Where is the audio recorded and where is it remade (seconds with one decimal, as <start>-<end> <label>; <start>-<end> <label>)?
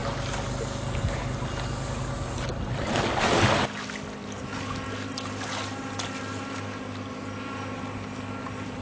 0.0-8.8 recorded